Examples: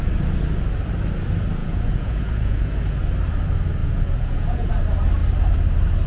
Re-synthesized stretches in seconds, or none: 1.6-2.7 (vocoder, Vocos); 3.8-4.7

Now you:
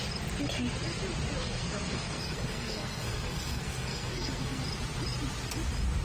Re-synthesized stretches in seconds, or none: 1.4-4.6 (codec, SNAC)

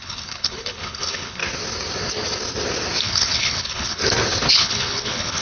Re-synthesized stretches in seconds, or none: 0.0-1.4 (codec, HILCodec); 3.0-4.0; 4.5-5.4

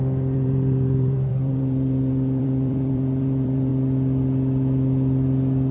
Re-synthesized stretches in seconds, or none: 0.0-3.7 (vocoder, BigVGAN v2)

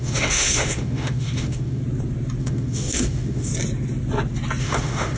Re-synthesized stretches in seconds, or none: 0.0-1.8 (autoencoder, DAC-VAE); 2.4-3.5; 4.6-5.2

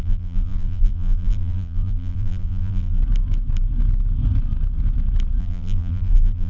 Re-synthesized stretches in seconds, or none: 0.0-3.0 (vocoder, BigVGAN v2); 5.4-6.5